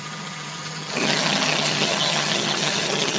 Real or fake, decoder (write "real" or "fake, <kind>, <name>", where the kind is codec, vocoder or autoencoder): fake, vocoder, HiFi-GAN